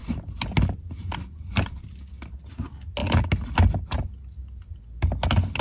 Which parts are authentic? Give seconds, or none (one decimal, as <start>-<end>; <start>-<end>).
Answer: 0.0-5.6